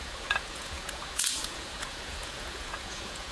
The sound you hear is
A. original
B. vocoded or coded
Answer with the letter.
B